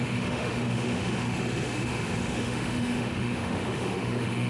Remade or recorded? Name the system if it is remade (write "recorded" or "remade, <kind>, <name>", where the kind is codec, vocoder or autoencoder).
remade, autoencoder, DAC-VAE